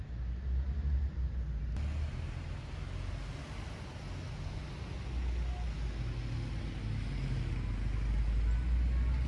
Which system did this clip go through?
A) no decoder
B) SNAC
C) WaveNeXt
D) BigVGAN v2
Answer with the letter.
A